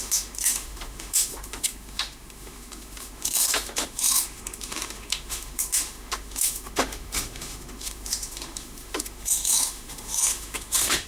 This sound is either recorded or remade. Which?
remade